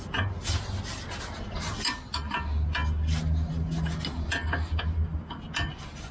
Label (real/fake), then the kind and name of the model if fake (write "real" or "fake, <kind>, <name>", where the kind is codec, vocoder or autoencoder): real